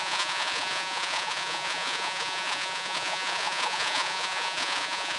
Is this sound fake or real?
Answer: fake